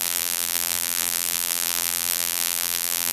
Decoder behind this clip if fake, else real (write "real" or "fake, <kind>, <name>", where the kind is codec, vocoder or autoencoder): fake, vocoder, BigVGAN v2